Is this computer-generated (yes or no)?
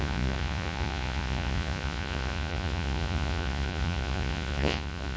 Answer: yes